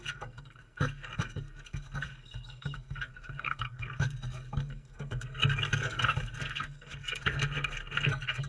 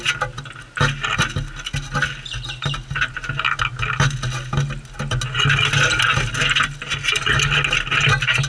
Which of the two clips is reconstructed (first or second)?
first